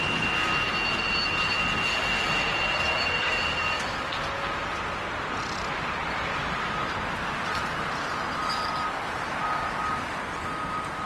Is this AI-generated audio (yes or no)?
no